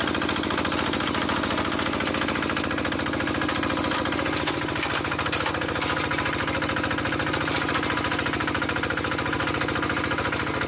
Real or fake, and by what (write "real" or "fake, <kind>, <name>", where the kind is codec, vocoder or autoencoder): real